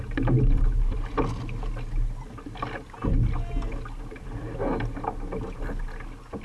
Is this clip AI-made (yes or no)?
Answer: no